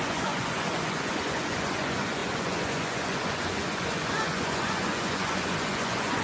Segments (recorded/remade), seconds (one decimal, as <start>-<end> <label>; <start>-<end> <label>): 0.0-6.2 remade